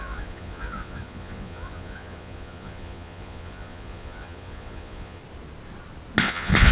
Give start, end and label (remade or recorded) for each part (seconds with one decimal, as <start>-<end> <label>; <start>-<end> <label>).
0.0-5.2 remade; 5.2-6.2 recorded; 6.2-6.7 remade